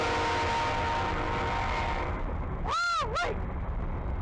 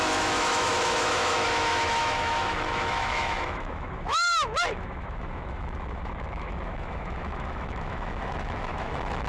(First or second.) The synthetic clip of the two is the second